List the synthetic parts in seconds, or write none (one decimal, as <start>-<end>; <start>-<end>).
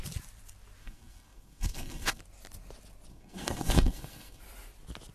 0.8-2.2; 3.1-4.4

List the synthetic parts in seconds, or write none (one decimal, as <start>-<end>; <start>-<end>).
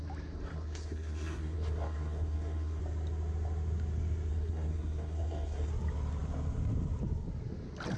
0.5-2.8; 4.3-5.7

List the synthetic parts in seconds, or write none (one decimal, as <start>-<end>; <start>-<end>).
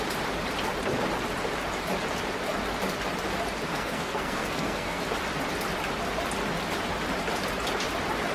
3.7-5.0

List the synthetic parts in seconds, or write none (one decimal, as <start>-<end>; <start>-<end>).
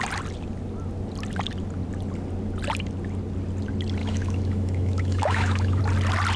4.0-5.8